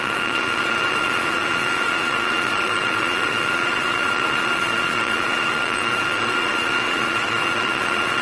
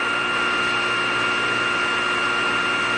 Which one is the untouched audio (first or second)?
second